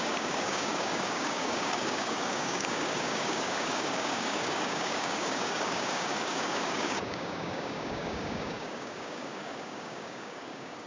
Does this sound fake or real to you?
fake